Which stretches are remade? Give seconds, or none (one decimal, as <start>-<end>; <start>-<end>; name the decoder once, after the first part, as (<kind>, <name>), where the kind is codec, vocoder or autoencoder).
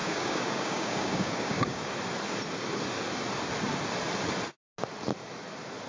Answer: 0.0-1.9 (codec, DAC)